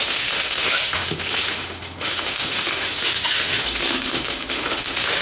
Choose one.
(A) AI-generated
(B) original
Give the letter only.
A